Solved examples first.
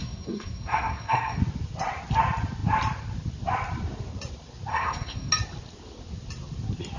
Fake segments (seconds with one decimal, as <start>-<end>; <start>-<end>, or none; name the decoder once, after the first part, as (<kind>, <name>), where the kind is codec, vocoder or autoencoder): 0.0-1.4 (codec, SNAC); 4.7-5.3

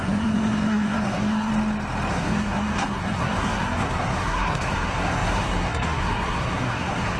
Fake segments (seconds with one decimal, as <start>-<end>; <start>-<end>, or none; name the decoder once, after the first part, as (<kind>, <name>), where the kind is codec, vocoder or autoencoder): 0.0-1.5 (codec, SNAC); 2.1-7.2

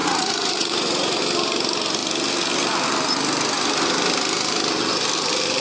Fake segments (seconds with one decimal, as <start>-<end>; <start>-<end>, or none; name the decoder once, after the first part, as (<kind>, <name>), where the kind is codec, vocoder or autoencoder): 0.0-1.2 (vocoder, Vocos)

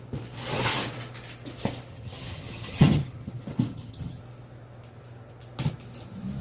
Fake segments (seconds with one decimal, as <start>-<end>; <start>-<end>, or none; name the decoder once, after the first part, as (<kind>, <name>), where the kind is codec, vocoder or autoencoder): 1.9-3.3 (vocoder, HiFi-GAN); 3.7-4.2